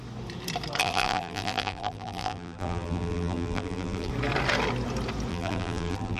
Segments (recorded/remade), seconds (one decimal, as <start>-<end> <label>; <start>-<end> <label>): 0.0-0.8 recorded; 0.8-4.1 remade; 4.1-5.3 recorded; 5.3-6.2 remade